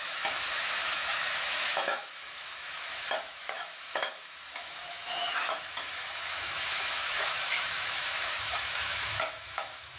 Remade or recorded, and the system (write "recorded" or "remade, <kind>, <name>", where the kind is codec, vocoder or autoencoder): remade, autoencoder, DAC-VAE